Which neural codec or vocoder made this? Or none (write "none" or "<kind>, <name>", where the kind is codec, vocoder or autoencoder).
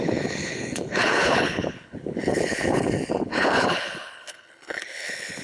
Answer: codec, HILCodec